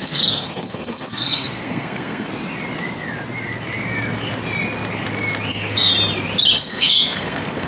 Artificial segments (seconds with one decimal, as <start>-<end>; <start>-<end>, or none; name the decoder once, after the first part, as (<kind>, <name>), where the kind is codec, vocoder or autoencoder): 0.0-2.3 (codec, SNAC); 5.5-5.9; 6.7-7.7